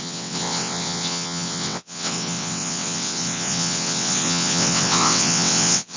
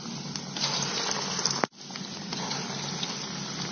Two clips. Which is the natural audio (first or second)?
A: second